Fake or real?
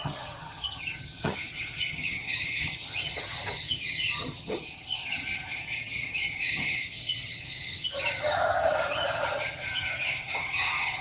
fake